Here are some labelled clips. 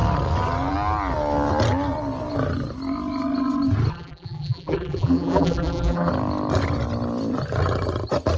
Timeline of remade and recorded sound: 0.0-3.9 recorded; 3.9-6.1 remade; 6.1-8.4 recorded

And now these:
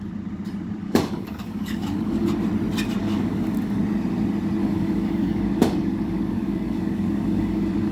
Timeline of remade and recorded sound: 0.0-0.8 recorded; 0.8-2.3 remade; 2.3-3.0 recorded; 3.0-3.8 remade; 3.8-4.6 recorded; 4.6-7.9 remade

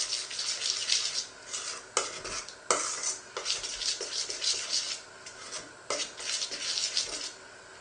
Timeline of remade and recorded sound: 0.0-7.8 recorded

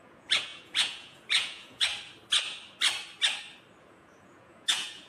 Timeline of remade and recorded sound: 0.0-1.9 remade; 1.9-3.8 recorded; 3.8-5.1 remade

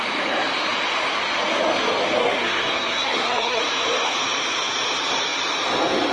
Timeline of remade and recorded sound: 0.0-2.2 recorded; 2.2-3.6 remade; 3.6-6.1 recorded

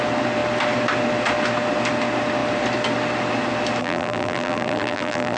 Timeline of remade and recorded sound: 0.0-3.8 recorded; 3.8-5.4 remade